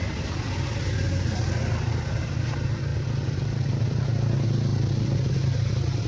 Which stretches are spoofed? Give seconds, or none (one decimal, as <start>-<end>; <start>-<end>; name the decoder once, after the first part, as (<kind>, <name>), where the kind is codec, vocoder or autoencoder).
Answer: 2.9-4.0 (vocoder, BigVGAN v2); 4.7-5.3